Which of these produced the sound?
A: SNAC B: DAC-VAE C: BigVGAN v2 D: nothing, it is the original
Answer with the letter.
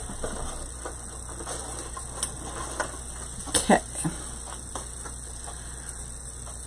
D